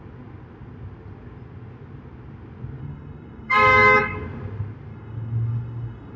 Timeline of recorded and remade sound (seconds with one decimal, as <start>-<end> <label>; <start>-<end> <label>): 0.0-2.8 recorded; 2.8-4.0 remade; 4.0-4.9 recorded; 4.9-6.2 remade